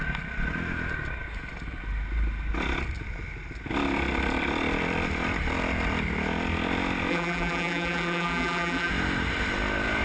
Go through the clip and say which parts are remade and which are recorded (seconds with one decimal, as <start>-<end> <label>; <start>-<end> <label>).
0.0-7.1 recorded; 7.1-8.9 remade; 8.9-10.0 recorded